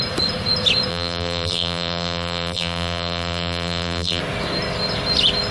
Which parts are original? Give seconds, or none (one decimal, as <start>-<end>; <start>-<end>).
0.0-0.9; 4.2-5.5